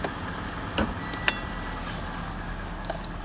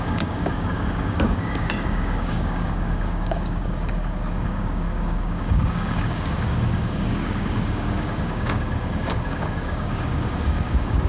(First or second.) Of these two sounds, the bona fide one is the first